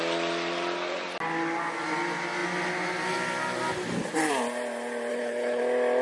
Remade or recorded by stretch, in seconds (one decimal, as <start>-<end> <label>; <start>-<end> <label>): 0.0-5.1 recorded; 5.1-5.6 remade; 5.6-6.0 recorded